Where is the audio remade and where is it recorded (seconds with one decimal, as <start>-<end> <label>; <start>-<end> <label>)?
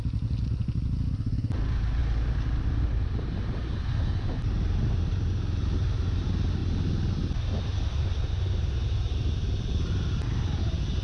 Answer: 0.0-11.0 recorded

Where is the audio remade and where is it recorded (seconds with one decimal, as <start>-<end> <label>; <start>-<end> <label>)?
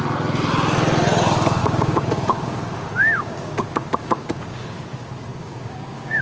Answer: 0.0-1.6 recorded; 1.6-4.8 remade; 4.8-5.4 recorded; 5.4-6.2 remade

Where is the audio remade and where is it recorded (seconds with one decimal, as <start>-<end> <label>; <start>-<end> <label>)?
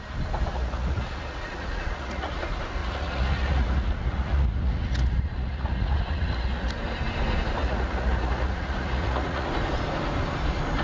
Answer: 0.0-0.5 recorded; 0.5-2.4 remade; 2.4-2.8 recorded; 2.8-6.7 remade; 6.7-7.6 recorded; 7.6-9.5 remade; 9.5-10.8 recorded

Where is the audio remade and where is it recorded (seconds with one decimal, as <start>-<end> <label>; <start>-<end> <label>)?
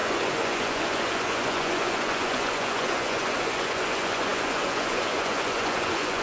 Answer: 0.0-6.2 remade